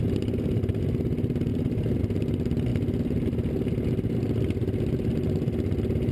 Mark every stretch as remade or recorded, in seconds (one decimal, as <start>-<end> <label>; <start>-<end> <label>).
0.0-1.5 recorded; 1.5-2.0 remade; 2.0-6.1 recorded